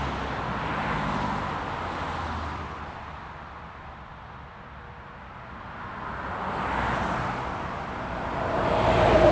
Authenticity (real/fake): real